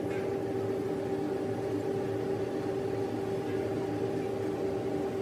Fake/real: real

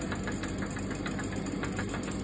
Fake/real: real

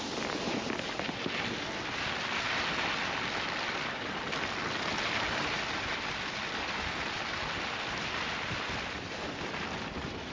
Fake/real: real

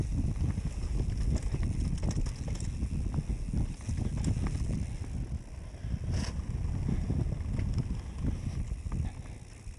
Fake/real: real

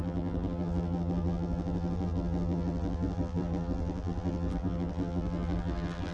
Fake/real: fake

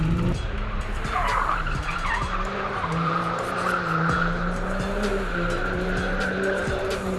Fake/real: fake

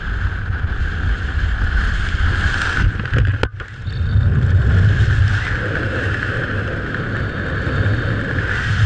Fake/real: real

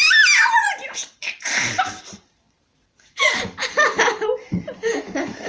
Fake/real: fake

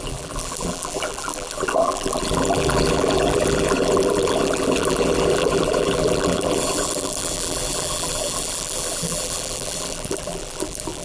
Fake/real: fake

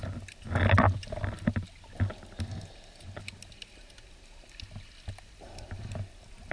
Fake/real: real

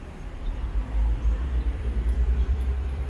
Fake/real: fake